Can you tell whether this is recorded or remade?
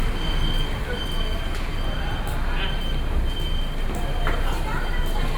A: recorded